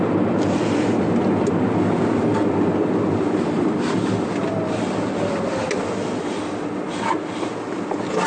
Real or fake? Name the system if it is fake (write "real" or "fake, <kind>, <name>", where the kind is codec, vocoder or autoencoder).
real